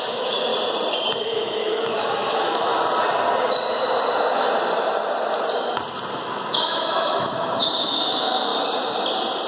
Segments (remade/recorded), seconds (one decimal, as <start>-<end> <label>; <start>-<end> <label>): 0.0-0.5 remade; 0.5-1.2 recorded; 1.2-2.7 remade; 2.7-6.1 recorded; 6.1-8.5 remade; 8.5-9.5 recorded